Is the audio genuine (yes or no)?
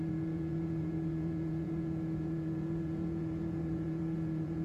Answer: no